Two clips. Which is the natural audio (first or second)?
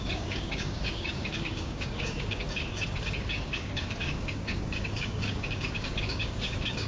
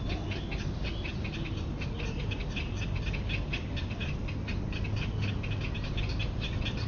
second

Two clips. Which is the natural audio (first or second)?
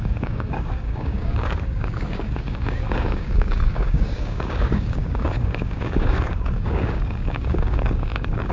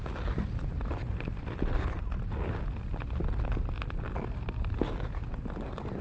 second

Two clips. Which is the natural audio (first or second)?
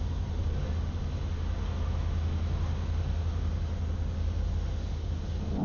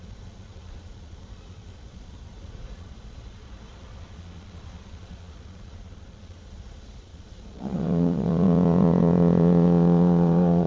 first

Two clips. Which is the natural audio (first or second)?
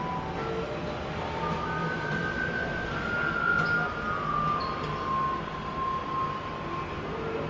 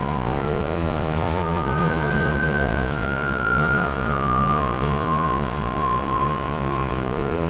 first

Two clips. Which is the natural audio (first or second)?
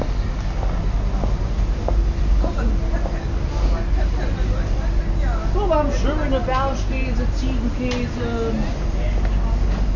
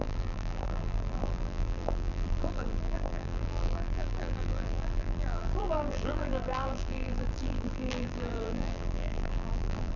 first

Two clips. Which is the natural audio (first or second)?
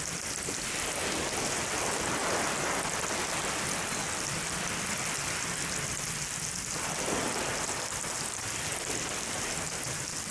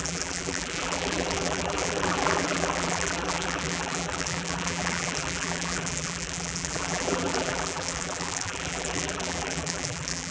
first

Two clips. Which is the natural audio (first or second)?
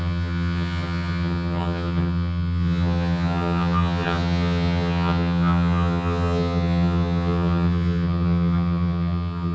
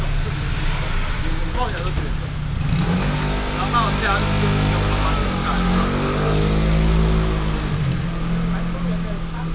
second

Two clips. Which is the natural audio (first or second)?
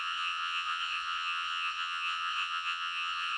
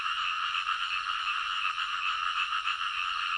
second